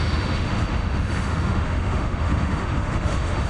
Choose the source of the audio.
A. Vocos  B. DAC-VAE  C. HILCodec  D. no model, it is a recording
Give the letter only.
B